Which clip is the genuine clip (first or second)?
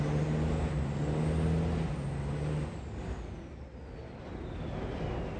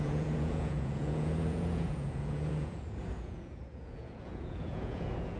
first